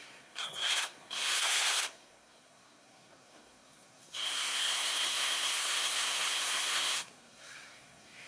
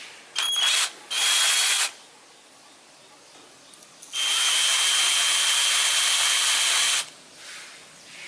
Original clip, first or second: second